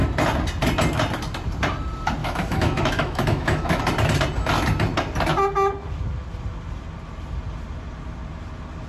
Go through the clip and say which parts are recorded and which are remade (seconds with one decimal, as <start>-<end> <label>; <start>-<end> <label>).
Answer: 0.0-2.2 recorded; 2.2-3.8 remade; 3.8-8.9 recorded